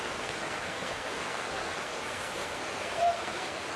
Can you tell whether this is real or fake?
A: fake